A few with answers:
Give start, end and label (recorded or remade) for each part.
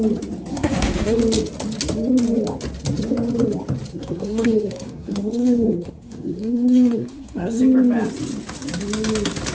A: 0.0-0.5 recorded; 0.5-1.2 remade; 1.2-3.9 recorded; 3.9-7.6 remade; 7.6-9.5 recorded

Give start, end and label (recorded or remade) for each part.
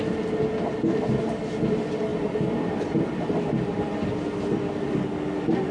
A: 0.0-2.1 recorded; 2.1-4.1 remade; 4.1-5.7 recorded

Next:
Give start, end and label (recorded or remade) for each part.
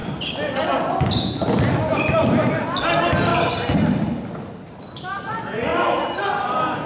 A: 0.0-3.3 recorded; 3.3-5.3 remade; 5.3-5.7 recorded; 5.7-6.9 remade